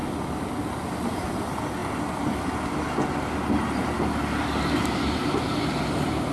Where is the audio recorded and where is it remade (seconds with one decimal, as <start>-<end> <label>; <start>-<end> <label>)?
0.0-6.3 recorded